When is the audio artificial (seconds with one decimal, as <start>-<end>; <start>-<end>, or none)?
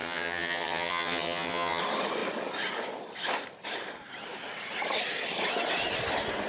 0.0-1.8